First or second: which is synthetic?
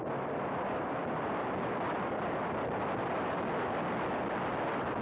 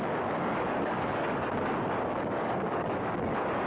second